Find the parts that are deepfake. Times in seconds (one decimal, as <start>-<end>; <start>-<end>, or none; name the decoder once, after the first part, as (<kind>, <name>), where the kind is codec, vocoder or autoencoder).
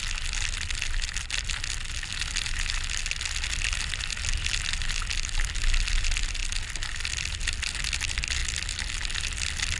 none